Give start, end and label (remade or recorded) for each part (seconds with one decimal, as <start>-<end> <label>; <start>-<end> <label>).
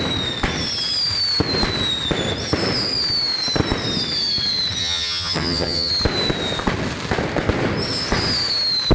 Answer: 0.0-4.8 recorded; 4.8-5.9 remade; 5.9-8.9 recorded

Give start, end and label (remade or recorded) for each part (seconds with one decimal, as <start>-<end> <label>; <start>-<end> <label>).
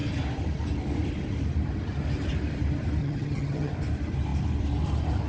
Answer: 0.0-3.0 recorded; 3.0-3.7 remade; 3.7-5.3 recorded